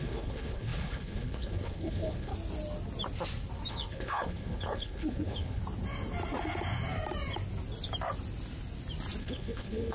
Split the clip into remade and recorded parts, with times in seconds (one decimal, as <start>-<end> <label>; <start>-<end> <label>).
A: 0.0-2.3 remade; 2.3-3.7 recorded; 3.7-5.6 remade; 5.6-9.2 recorded; 9.2-9.9 remade